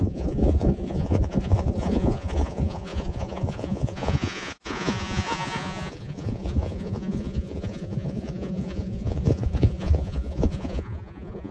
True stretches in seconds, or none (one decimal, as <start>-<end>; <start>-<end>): none